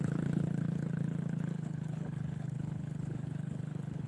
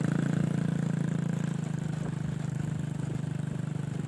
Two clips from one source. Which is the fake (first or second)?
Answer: first